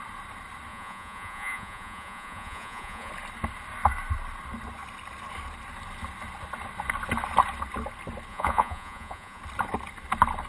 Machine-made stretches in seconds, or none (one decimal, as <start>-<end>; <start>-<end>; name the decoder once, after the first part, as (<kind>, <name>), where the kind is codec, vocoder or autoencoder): 0.7-3.1 (vocoder, Vocos); 8.3-9.4